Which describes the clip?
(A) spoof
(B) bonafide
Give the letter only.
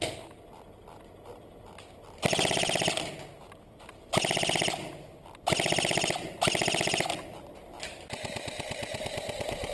B